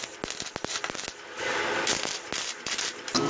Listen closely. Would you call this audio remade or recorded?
recorded